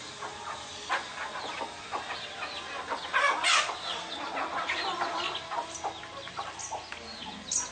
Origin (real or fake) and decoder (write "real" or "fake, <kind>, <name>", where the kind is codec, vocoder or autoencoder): real